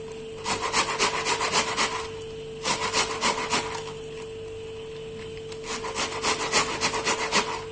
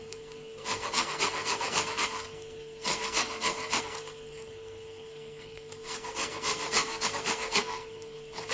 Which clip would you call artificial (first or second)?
second